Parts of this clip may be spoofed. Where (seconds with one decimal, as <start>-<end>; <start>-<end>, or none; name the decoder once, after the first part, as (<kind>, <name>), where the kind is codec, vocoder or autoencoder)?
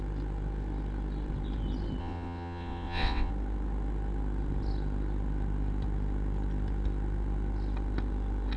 2.0-3.3 (vocoder, WaveNeXt)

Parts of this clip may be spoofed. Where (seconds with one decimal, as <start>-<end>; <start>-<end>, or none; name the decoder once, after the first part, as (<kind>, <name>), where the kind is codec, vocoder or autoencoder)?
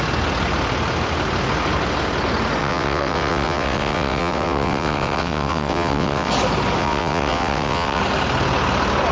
2.6-6.3 (vocoder, WaveNeXt); 6.8-8.0